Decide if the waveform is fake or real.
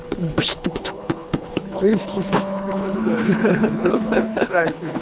fake